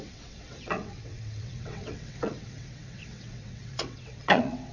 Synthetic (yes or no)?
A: yes